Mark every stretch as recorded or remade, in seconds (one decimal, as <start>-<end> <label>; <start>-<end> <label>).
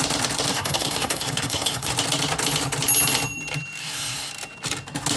0.0-0.5 recorded; 0.5-1.9 remade; 1.9-3.8 recorded; 3.8-4.3 remade; 4.3-5.2 recorded